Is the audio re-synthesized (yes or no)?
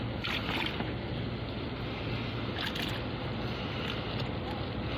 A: no